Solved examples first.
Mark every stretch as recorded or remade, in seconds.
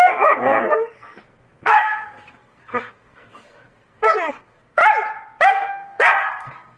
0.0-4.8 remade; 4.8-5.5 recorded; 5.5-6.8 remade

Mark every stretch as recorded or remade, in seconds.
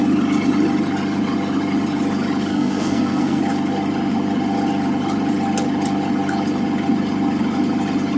0.0-2.5 recorded; 2.5-3.4 remade; 3.4-8.2 recorded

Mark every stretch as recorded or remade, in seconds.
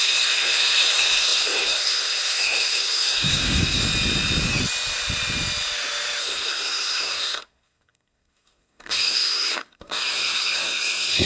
0.0-3.8 remade; 3.8-6.2 recorded; 6.2-11.3 remade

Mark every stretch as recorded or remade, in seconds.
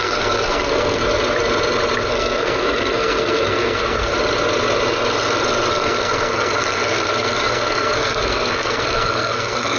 0.0-1.0 remade; 1.0-2.1 recorded; 2.1-4.1 remade; 4.1-5.7 recorded; 5.7-9.8 remade